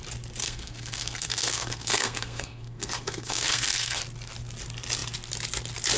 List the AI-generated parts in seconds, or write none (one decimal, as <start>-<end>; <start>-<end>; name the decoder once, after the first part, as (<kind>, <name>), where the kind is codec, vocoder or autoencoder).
0.4-4.0 (codec, SNAC)